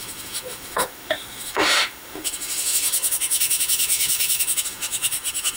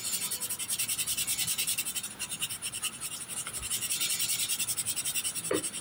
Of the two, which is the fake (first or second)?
first